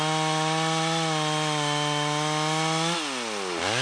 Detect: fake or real real